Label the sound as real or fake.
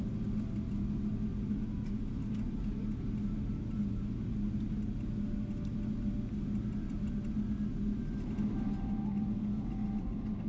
real